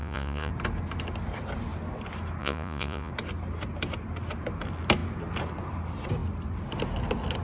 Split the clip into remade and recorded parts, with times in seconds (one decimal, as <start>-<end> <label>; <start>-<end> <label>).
0.0-0.5 remade; 0.5-2.4 recorded; 2.4-3.1 remade; 3.1-7.4 recorded